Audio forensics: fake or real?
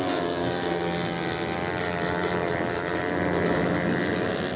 real